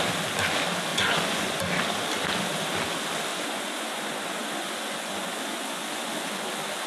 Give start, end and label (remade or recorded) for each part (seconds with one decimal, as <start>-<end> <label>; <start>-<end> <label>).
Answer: 0.0-0.9 recorded; 0.9-1.6 remade; 1.6-3.3 recorded; 3.3-6.5 remade; 6.5-6.9 recorded